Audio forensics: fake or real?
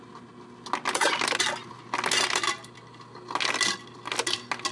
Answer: real